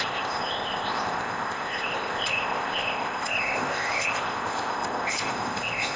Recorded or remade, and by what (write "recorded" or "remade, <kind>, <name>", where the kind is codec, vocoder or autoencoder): remade, codec, ZipCodec